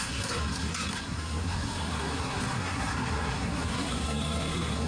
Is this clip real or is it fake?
fake